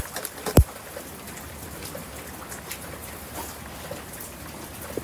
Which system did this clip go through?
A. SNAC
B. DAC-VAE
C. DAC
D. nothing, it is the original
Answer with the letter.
D